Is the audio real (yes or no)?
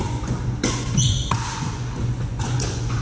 no